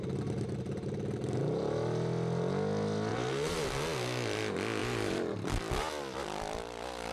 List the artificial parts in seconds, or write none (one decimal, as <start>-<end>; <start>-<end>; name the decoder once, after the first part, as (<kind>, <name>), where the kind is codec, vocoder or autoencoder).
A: 3.1-3.7 (vocoder, BigVGAN v2); 4.8-5.6